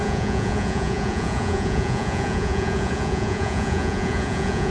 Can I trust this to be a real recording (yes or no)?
no